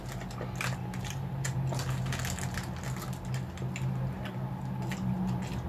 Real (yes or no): yes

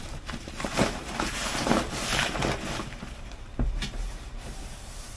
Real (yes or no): no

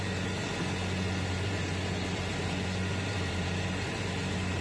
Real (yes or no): no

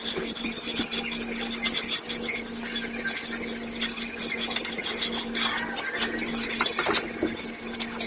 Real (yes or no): yes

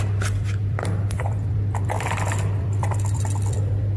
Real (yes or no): no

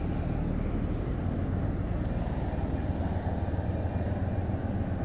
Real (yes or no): yes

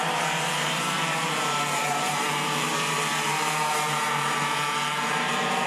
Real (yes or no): no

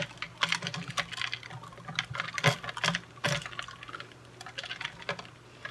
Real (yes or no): yes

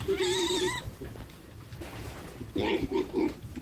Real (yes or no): no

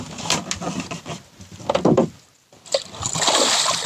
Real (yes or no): yes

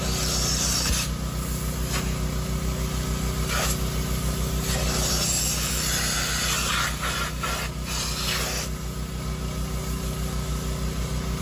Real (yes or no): yes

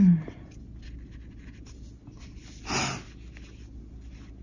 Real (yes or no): yes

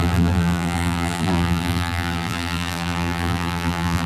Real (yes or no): no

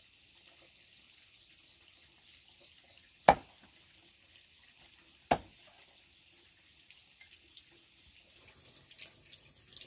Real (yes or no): yes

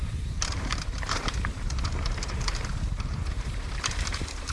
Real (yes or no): no